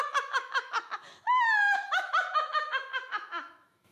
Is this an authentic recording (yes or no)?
no